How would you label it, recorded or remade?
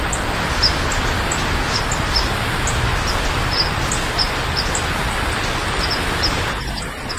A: recorded